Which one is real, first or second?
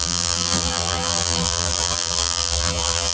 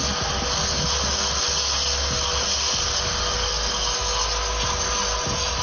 second